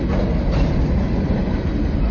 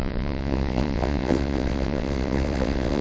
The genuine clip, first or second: first